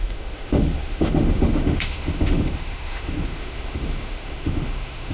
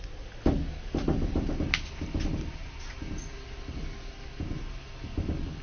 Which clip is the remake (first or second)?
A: first